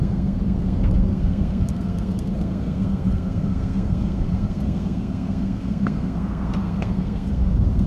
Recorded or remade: remade